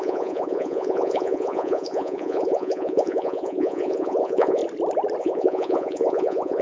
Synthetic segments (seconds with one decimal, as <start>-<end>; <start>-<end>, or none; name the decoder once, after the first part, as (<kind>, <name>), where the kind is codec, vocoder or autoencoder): 0.0-4.6 (vocoder, Vocos); 5.2-6.6